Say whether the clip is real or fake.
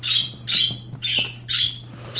real